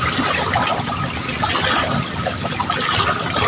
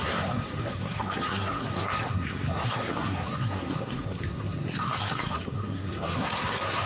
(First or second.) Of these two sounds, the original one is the first